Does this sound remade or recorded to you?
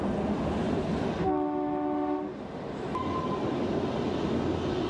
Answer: recorded